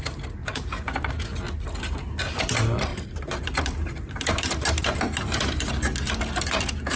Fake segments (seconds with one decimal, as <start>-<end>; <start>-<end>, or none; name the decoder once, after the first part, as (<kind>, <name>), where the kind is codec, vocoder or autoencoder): 0.4-1.1 (vocoder, BigVGAN v2); 2.9-5.7